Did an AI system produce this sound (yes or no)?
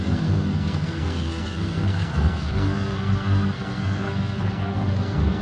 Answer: yes